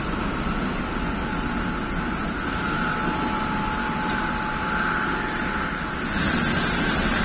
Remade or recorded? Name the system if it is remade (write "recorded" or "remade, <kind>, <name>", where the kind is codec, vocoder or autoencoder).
recorded